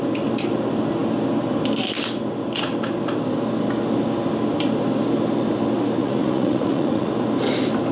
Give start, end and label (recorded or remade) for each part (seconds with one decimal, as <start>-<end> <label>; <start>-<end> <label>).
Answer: 0.0-6.0 recorded; 6.0-7.1 remade; 7.1-7.9 recorded